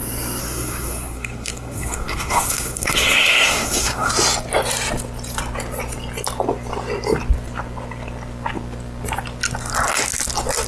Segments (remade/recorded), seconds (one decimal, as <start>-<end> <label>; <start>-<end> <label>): 0.0-0.4 recorded; 0.4-4.1 remade; 4.1-10.7 recorded